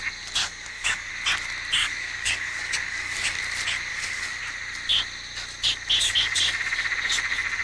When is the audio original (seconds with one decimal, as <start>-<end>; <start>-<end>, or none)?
0.0-0.4; 1.1-1.8; 3.4-3.9; 4.4-7.6